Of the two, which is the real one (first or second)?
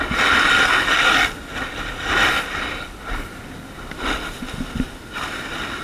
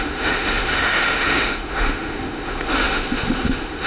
first